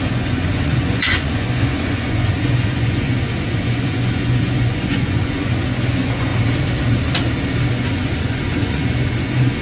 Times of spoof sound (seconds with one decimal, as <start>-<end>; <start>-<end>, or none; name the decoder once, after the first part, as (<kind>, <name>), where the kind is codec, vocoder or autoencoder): 0.0-6.3 (vocoder, Vocos); 7.7-9.6